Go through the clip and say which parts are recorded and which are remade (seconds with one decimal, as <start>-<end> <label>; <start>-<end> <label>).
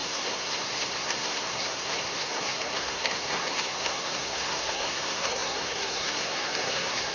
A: 0.0-7.1 remade